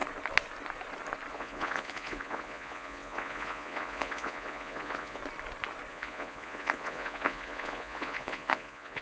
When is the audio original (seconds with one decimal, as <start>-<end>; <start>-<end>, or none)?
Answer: 0.0-1.3; 5.2-5.9